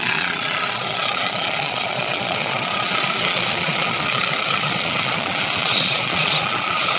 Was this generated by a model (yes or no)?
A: yes